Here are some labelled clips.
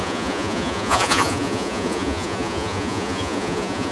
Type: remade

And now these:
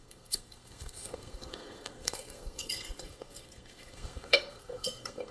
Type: remade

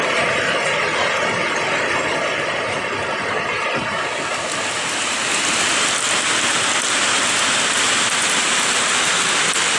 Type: recorded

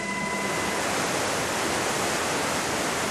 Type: recorded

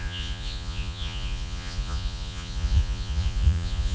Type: remade